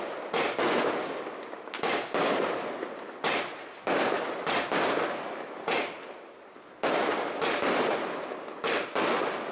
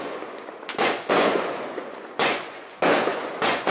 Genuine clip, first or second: first